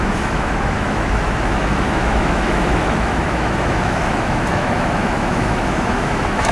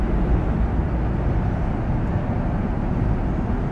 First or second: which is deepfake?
first